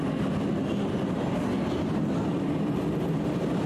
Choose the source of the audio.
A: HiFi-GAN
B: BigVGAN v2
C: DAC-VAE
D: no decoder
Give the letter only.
D